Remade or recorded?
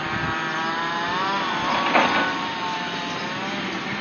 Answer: recorded